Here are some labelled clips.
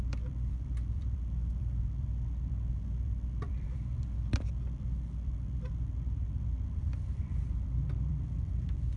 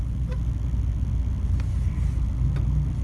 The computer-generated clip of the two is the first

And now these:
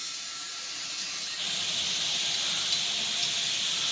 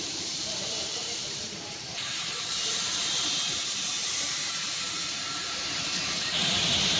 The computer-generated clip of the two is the second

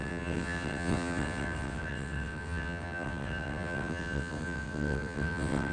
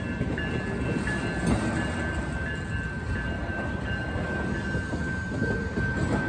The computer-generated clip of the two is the first